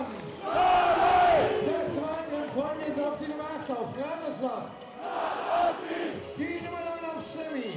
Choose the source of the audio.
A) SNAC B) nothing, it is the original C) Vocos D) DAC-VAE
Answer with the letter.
B